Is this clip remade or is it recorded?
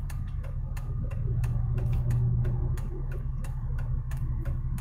remade